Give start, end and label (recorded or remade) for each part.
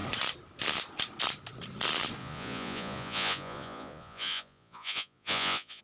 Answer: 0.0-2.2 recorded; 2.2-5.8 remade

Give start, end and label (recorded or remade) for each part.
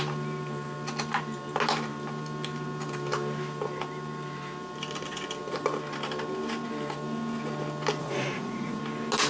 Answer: 0.0-8.0 recorded; 8.0-8.8 remade; 8.8-9.3 recorded